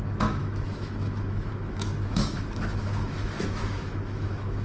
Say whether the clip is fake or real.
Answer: fake